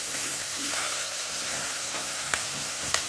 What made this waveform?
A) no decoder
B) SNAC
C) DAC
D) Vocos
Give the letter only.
B